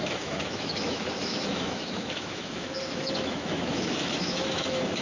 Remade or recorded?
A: remade